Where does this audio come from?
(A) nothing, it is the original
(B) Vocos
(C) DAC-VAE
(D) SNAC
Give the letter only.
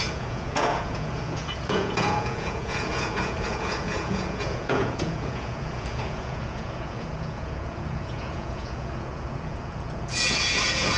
B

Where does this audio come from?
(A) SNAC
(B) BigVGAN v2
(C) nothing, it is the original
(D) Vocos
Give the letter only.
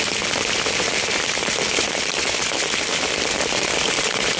C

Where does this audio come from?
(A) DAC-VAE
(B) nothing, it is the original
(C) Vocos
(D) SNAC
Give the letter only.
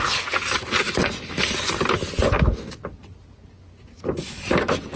B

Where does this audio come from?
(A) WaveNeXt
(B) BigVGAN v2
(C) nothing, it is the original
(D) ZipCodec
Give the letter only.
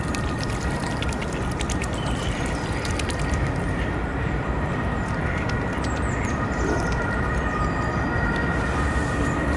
B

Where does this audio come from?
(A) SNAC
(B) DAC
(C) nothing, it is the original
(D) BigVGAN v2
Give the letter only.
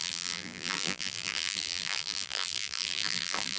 D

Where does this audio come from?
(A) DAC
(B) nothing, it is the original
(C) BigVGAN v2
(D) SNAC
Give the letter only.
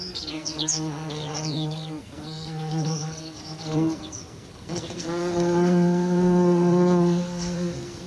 D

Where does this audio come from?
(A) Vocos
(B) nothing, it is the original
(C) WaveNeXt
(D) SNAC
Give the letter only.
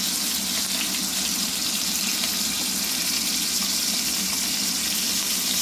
B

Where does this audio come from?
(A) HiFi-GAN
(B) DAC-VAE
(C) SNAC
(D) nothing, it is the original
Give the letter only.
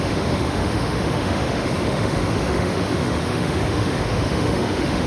B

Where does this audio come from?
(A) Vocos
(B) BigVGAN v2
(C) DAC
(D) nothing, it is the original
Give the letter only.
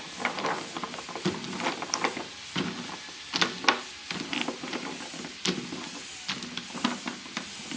D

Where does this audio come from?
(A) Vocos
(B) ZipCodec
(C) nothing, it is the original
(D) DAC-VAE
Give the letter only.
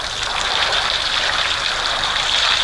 C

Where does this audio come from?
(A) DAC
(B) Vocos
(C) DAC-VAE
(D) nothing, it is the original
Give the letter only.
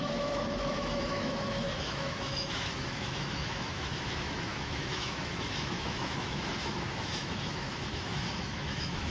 C